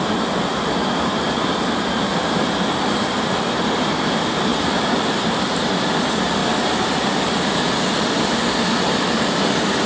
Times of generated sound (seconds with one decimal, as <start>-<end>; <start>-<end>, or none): 2.1-2.6; 4.5-5.9